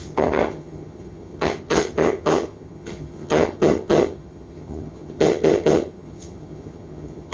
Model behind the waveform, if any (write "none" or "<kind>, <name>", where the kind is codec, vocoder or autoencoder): vocoder, HiFi-GAN